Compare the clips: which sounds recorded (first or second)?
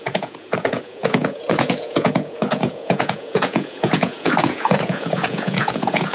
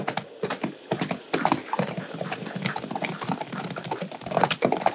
second